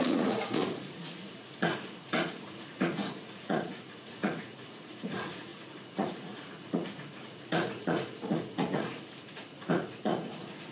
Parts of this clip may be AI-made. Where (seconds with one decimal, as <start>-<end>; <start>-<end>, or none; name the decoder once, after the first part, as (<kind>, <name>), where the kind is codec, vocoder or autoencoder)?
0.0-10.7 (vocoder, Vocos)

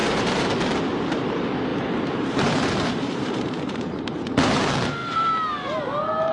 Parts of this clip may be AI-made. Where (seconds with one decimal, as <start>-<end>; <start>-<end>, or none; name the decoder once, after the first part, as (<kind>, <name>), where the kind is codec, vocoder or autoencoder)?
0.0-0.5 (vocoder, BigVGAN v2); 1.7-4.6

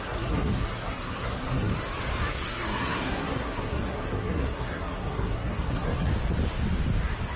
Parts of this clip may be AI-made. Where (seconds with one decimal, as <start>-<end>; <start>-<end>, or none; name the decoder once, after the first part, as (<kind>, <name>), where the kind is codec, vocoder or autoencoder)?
0.0-1.7 (codec, SNAC); 2.3-6.1

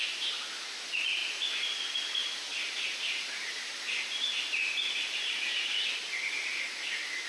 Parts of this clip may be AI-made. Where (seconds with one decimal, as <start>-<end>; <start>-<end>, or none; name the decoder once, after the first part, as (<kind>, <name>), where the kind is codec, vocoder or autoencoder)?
2.2-6.6 (vocoder, BigVGAN v2)